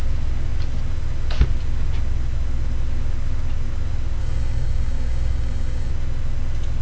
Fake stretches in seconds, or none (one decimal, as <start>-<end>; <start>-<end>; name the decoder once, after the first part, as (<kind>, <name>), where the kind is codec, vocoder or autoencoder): 4.2-5.9 (codec, DAC)